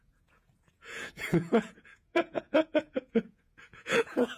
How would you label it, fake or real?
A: fake